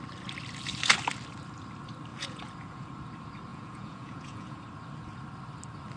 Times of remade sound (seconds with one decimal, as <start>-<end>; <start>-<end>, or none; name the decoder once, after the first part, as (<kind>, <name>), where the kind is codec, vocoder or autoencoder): 2.1-2.9 (vocoder, Vocos); 3.5-4.6